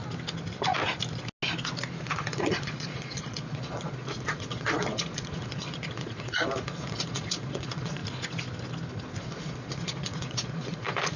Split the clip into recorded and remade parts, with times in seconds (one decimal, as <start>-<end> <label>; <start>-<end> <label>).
0.0-2.0 recorded; 2.0-8.0 remade; 8.0-9.2 recorded; 9.2-11.2 remade